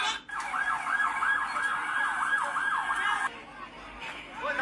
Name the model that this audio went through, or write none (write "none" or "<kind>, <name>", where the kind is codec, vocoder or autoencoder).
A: none